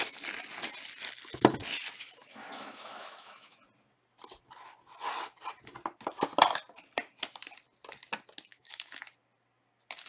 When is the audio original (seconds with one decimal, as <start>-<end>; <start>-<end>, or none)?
0.0-2.2; 3.6-8.5; 9.0-10.1